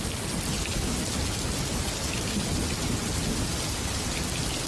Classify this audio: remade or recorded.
recorded